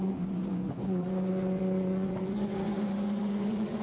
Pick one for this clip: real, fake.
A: fake